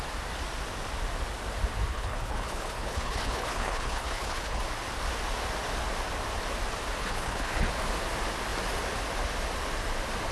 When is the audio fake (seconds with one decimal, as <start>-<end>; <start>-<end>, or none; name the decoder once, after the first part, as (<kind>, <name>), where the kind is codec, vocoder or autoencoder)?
1.9-4.6 (codec, HILCodec); 7.0-7.7